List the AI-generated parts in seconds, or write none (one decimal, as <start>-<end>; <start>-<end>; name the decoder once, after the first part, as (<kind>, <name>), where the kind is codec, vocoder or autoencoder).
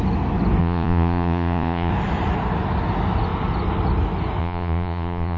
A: 0.6-1.9 (vocoder, Vocos); 4.4-5.4